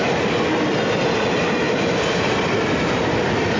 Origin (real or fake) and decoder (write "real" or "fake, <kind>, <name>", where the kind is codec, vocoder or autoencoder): real